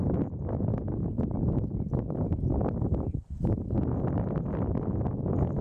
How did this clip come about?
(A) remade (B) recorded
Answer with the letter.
A